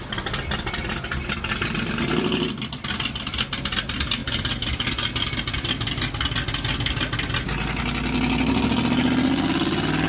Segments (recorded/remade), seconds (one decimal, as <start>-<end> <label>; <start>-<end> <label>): 0.0-10.1 recorded